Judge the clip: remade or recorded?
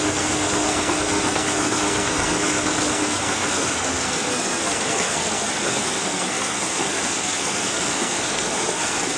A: remade